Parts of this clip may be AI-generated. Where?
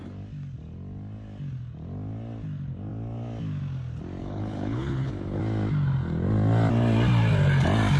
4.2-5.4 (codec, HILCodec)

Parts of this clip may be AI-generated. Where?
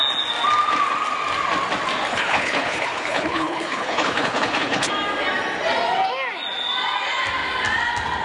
2.1-4.9 (codec, HILCodec)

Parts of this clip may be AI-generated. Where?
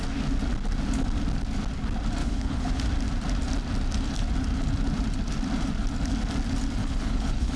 2.2-2.8 (codec, HILCodec); 6.8-7.6